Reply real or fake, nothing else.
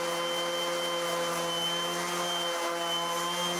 real